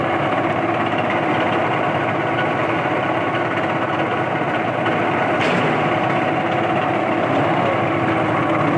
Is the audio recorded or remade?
recorded